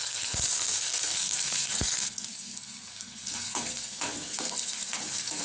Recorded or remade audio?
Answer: remade